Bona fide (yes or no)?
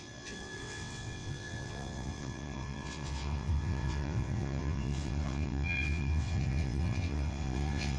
no